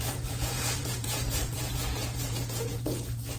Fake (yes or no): yes